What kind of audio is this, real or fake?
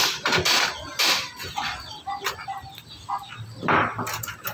real